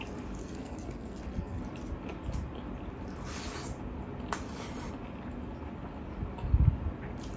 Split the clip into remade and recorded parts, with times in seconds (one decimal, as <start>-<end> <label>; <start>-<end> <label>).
0.0-0.4 recorded; 0.4-1.6 remade; 1.6-7.4 recorded